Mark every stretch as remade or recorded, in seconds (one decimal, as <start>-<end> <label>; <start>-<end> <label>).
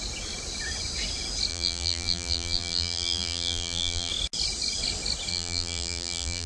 0.0-1.5 recorded; 1.5-4.1 remade; 4.1-5.3 recorded; 5.3-6.5 remade